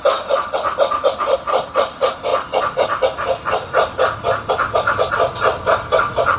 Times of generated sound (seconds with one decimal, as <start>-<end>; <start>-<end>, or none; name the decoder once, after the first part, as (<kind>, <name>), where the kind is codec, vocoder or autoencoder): none